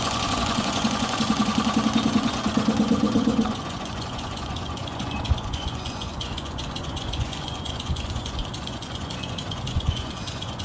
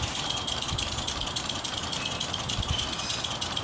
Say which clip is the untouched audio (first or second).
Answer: second